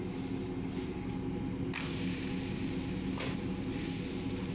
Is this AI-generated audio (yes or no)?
no